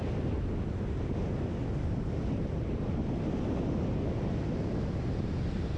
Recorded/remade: recorded